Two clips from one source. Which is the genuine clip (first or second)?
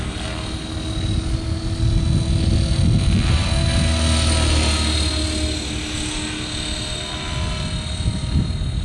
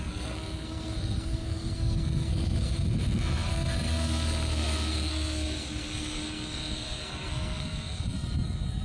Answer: first